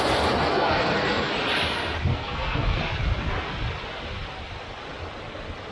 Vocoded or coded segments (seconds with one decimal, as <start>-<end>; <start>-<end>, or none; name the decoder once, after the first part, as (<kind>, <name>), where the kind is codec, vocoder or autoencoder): 0.5-1.3 (codec, SNAC); 2.1-2.8